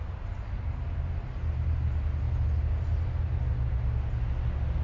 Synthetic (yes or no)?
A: no